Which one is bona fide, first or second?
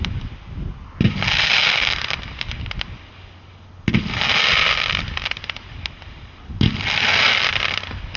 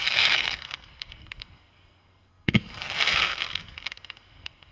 first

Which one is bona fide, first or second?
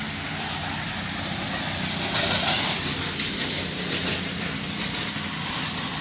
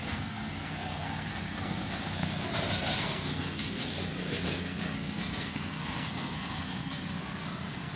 first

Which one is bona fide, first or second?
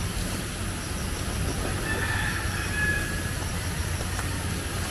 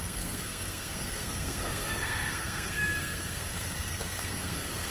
first